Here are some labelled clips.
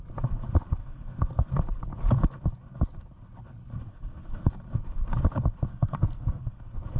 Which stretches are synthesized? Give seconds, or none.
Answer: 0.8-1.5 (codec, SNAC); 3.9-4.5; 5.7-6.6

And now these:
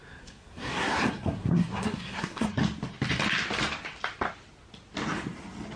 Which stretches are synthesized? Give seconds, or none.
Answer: 0.0-2.6 (codec, SNAC)

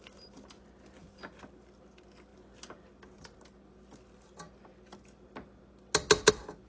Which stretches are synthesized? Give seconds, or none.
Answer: none

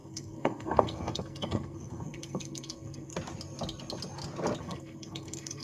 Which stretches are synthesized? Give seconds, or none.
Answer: 0.0-3.1 (codec, SNAC); 4.6-5.6

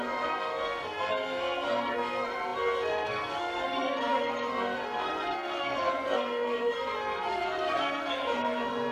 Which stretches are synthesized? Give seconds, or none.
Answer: 0.0-8.9 (codec, SNAC)

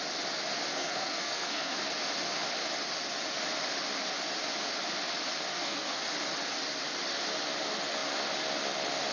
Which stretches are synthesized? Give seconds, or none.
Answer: 0.7-1.8 (codec, SNAC); 5.5-6.1

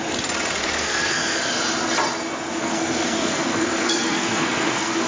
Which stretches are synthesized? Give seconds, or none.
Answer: 0.6-1.5 (codec, SNAC); 2.6-5.1

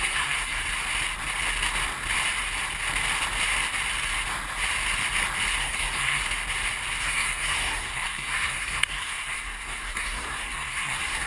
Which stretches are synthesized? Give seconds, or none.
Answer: 0.0-0.6 (codec, SNAC); 5.6-6.2; 7.0-11.3